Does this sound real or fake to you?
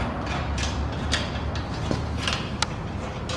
real